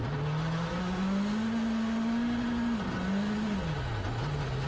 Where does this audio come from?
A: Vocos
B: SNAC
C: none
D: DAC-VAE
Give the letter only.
C